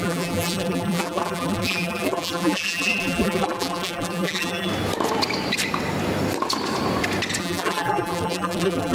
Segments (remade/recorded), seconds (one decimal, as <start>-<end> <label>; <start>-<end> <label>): 0.0-4.7 remade; 4.7-7.4 recorded; 7.4-8.9 remade